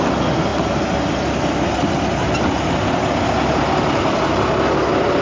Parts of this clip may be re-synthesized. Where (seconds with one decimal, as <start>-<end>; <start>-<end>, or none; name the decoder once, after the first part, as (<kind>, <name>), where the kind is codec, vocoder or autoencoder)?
none